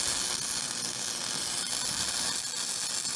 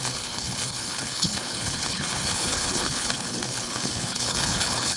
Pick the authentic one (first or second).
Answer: first